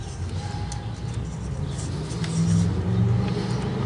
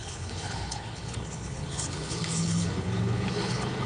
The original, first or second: first